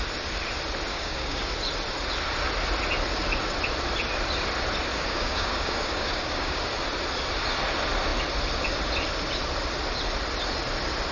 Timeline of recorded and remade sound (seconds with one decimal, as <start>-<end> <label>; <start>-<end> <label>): 0.0-0.9 recorded; 0.9-1.5 remade; 1.5-4.9 recorded; 4.9-6.6 remade; 6.6-11.1 recorded